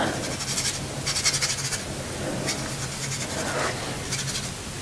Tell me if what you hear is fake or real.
real